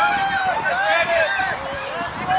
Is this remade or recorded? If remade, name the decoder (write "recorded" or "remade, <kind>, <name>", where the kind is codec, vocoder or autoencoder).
recorded